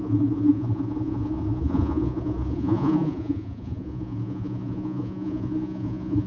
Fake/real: fake